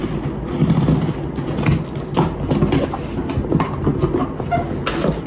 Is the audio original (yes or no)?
yes